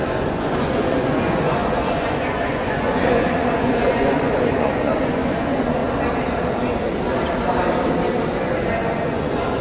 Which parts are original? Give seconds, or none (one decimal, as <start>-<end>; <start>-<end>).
5.8-8.3

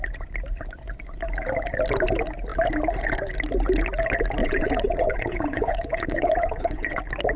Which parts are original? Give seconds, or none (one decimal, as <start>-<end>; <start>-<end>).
0.0-4.4; 7.0-7.4